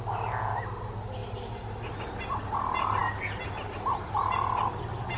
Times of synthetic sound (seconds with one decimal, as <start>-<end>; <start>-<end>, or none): none